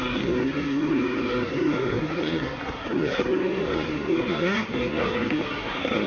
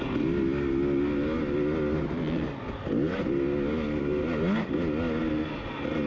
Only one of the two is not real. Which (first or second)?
first